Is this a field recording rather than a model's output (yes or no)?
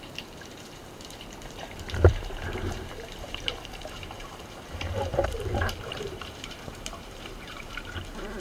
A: no